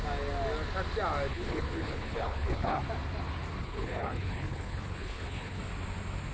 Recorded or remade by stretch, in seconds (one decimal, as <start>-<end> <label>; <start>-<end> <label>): 0.0-1.3 recorded; 1.3-2.8 remade; 2.8-3.6 recorded; 3.6-5.6 remade; 5.6-6.3 recorded